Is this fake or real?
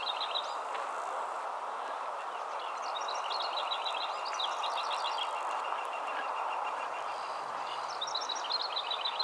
real